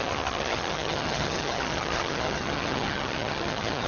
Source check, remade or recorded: remade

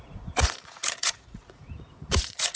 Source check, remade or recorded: remade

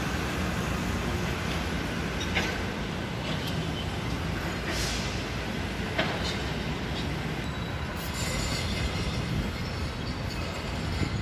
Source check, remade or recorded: recorded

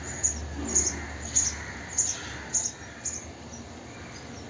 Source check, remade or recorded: recorded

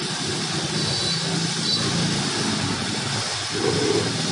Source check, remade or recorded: recorded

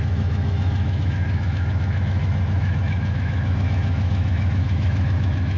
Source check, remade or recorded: remade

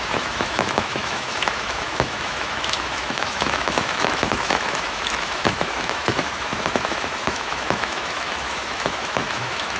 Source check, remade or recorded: remade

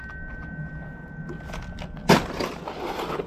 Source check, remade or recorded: recorded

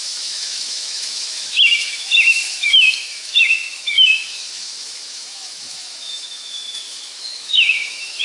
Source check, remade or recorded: remade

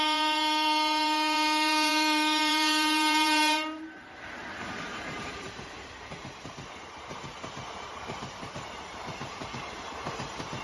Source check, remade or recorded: remade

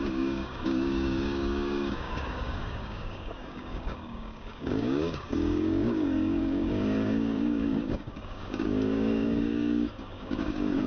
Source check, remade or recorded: remade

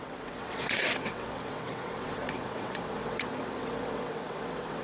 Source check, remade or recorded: remade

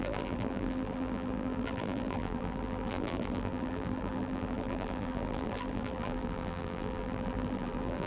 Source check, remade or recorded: remade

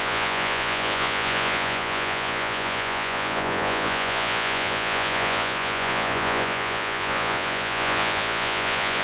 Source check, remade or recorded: remade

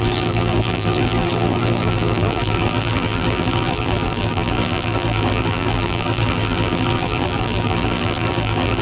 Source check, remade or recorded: remade